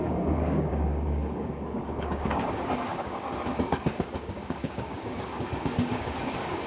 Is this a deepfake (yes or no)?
yes